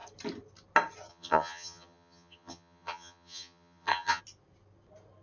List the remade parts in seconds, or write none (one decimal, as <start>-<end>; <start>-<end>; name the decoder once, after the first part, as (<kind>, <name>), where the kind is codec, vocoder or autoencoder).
1.1-4.2 (vocoder, HiFi-GAN)